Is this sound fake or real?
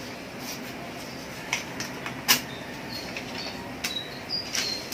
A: real